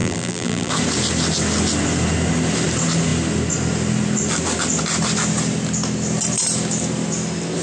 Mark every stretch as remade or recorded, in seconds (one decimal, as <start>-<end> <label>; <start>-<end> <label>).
0.0-0.7 remade; 0.7-7.6 recorded

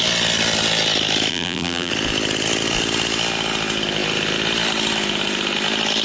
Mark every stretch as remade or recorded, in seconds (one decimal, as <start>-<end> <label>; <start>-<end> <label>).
0.0-1.3 recorded; 1.3-1.9 remade; 1.9-6.0 recorded

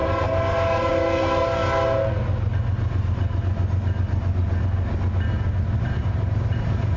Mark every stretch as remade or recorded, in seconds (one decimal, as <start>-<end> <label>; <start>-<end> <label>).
0.0-1.6 remade; 1.6-5.8 recorded; 5.8-7.0 remade

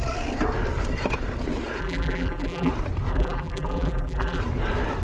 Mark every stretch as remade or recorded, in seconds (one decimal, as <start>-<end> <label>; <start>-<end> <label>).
0.0-1.8 recorded; 1.8-2.7 remade; 2.7-3.1 recorded; 3.1-4.4 remade; 4.4-5.0 recorded

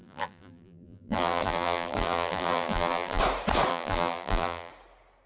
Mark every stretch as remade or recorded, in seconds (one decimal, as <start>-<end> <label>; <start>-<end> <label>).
0.0-3.2 remade; 3.2-3.7 recorded; 3.7-4.7 remade; 4.7-5.3 recorded